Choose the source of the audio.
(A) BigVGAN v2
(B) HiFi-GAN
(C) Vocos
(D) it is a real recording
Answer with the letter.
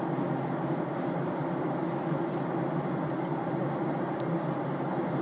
D